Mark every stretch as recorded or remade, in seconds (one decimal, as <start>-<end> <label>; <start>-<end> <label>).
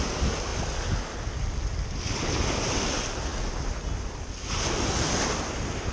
0.0-5.9 recorded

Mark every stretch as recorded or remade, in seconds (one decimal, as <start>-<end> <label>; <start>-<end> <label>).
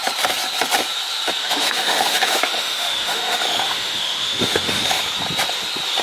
0.0-1.4 recorded; 1.4-5.0 remade; 5.0-6.0 recorded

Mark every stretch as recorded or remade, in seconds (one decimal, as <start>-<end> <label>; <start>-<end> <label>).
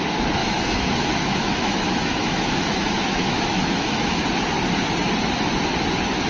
0.0-0.4 recorded; 0.4-4.2 remade; 4.2-6.3 recorded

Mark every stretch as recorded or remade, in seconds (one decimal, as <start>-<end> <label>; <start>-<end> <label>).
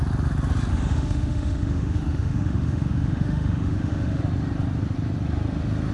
0.0-0.7 recorded; 0.7-4.2 remade; 4.2-5.9 recorded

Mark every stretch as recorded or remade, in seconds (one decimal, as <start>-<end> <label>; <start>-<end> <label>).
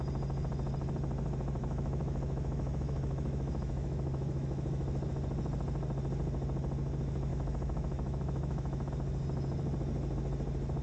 0.0-1.6 recorded; 1.6-5.1 remade; 5.1-7.3 recorded; 7.3-8.9 remade; 8.9-10.8 recorded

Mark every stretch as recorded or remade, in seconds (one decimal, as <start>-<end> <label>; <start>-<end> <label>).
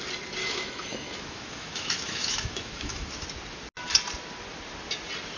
0.0-0.4 recorded; 0.4-3.1 remade; 3.1-5.4 recorded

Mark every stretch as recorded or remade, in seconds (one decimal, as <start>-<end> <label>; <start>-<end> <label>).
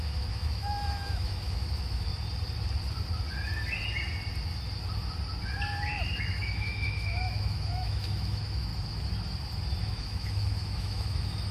0.0-2.1 remade; 2.1-6.2 recorded; 6.2-8.7 remade; 8.7-9.8 recorded; 9.8-11.5 remade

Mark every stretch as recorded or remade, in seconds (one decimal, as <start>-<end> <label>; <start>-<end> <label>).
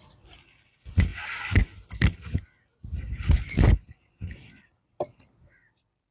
0.0-6.1 recorded